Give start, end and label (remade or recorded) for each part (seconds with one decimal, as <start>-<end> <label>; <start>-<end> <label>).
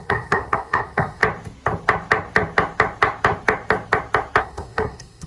0.0-1.2 remade; 1.2-4.4 recorded; 4.4-5.3 remade